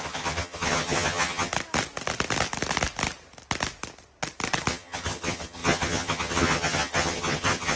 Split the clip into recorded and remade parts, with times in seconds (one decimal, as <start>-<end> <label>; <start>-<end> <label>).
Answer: 0.0-1.5 remade; 1.5-4.7 recorded; 4.7-7.8 remade